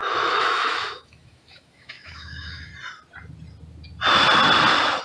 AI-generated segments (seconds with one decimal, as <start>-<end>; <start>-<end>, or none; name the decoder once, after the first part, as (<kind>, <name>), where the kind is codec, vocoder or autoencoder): 0.0-2.7 (autoencoder, DAC-VAE)